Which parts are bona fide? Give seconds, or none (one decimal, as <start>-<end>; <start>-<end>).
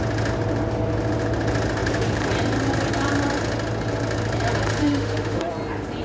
0.0-4.8; 5.5-6.0